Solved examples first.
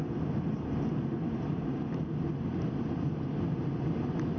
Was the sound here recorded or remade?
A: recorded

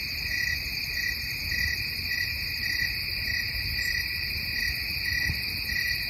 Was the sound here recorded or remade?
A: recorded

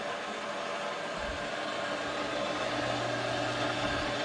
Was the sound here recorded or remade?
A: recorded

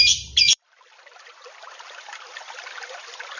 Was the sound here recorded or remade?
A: remade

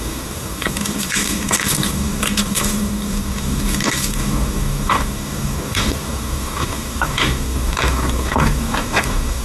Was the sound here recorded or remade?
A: remade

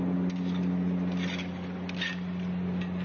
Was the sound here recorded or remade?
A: recorded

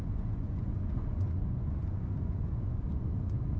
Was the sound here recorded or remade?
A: remade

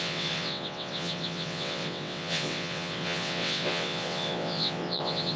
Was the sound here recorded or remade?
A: remade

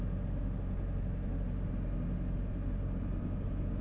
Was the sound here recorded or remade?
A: recorded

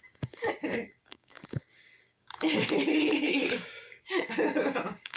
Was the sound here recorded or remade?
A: remade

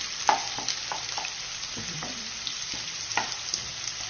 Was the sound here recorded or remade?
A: recorded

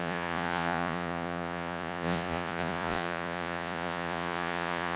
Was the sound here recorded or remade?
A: remade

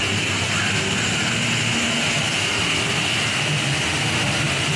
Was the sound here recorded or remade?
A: recorded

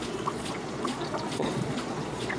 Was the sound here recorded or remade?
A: remade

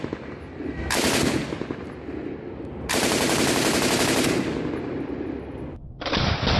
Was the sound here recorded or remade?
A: recorded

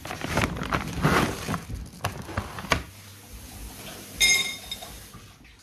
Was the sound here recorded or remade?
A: recorded